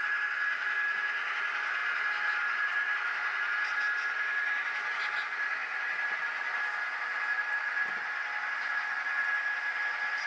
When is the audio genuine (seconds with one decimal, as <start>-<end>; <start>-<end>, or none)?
0.0-10.3